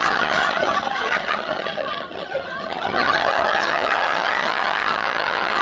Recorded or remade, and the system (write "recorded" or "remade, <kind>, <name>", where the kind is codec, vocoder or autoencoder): remade, vocoder, HiFi-GAN